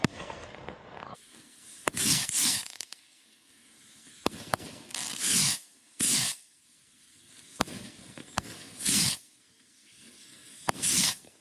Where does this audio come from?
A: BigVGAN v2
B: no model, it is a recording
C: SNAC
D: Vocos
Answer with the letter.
C